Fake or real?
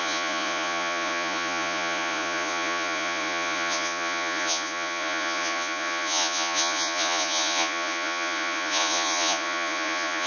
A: fake